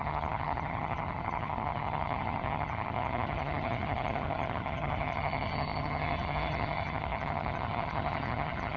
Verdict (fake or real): fake